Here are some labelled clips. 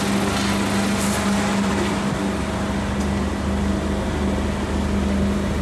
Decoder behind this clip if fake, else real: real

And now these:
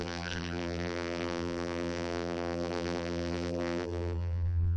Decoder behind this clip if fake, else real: fake, vocoder, BigVGAN v2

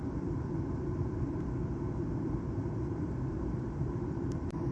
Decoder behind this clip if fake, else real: fake, vocoder, BigVGAN v2